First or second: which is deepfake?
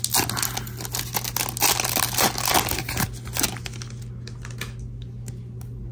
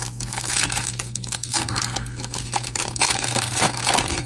second